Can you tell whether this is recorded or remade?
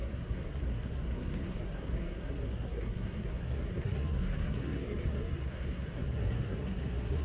remade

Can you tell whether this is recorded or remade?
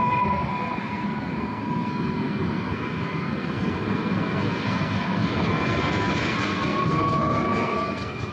remade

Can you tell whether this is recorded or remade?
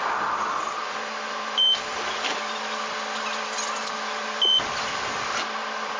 recorded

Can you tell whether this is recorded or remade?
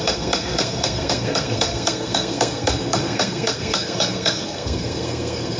remade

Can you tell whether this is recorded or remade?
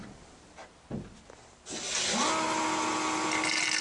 recorded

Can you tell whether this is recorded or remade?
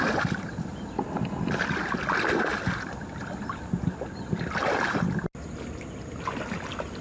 recorded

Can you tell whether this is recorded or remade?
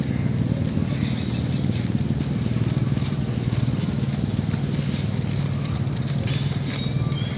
recorded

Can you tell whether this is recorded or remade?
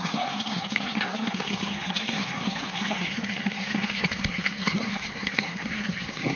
remade